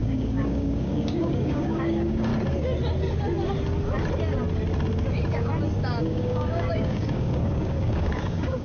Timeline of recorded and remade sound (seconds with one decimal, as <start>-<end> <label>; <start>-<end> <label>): 0.0-2.3 remade; 2.3-6.0 recorded; 6.0-8.6 remade